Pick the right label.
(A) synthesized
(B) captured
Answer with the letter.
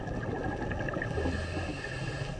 B